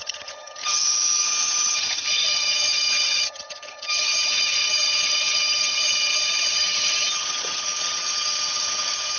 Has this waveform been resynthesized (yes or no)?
yes